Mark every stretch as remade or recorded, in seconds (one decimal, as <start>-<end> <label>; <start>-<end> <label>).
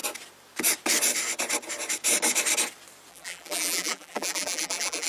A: 0.0-3.1 recorded; 3.1-5.1 remade